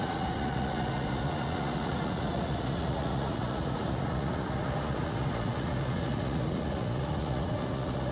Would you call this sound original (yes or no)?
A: no